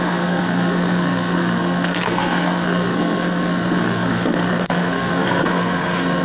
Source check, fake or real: fake